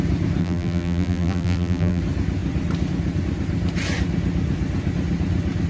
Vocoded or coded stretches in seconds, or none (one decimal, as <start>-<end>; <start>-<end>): 0.4-2.0